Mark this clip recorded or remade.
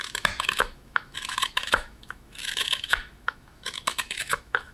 remade